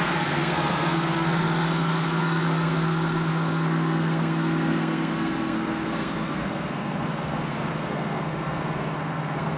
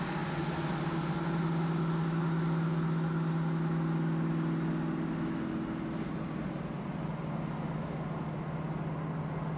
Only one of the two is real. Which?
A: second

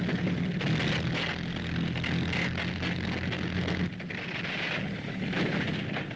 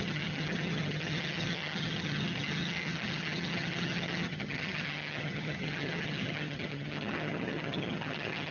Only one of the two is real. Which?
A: first